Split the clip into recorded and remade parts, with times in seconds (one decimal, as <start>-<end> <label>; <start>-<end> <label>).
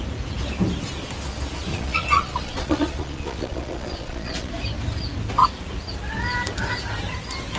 0.0-1.7 recorded; 1.7-4.5 remade; 4.5-7.6 recorded